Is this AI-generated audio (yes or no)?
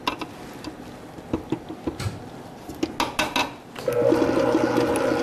no